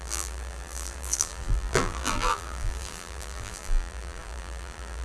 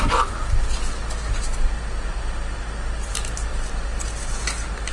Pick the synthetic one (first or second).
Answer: first